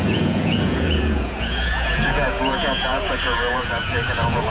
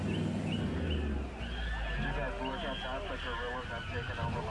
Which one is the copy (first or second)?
first